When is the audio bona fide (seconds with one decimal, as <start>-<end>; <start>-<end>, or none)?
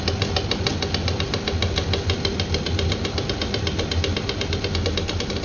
0.0-5.4